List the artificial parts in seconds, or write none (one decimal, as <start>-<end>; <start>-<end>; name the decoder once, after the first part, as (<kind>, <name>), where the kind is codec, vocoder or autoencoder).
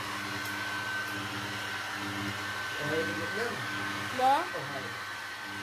3.2-4.2 (codec, DAC)